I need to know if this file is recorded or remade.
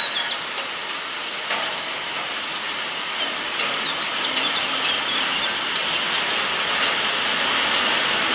recorded